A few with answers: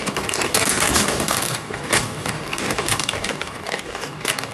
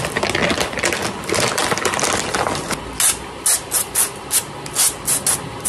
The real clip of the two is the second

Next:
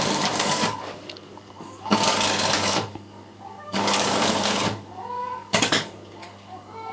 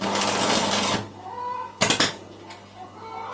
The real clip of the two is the second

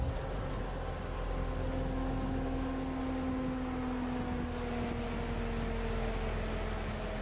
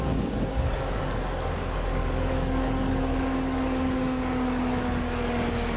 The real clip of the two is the first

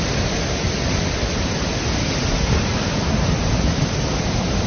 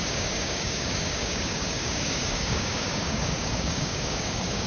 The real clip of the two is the first